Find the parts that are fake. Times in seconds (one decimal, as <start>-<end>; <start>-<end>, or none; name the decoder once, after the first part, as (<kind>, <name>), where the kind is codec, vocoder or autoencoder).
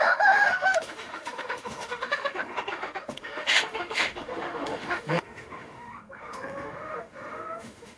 0.0-8.0 (autoencoder, DAC-VAE)